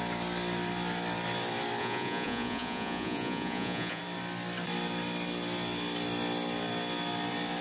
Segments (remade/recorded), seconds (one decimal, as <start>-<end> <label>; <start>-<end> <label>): 0.0-1.8 recorded; 1.8-4.0 remade; 4.0-7.6 recorded